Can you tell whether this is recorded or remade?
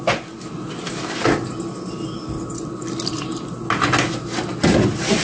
recorded